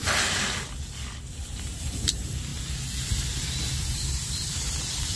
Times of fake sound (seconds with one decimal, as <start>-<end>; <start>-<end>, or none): 1.3-2.5; 3.9-5.2